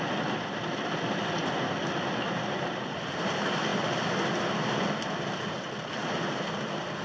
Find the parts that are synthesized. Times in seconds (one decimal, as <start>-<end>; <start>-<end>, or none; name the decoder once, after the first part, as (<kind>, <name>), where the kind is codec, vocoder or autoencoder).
1.8-3.0 (vocoder, BigVGAN v2)